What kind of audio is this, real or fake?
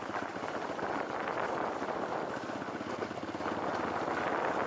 real